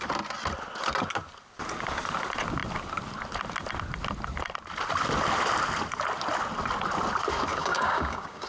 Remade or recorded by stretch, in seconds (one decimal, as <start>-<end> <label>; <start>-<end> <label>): 0.0-7.5 recorded; 7.5-8.5 remade